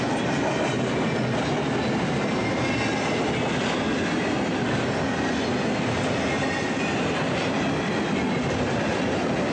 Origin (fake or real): real